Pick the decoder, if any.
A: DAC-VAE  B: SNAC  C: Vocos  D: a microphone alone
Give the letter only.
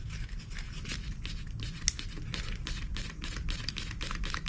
D